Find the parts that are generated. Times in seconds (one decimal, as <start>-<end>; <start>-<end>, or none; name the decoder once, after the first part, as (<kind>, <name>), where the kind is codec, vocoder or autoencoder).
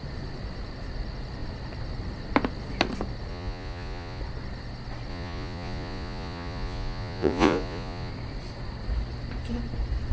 3.3-4.2 (vocoder, Vocos); 5.1-8.1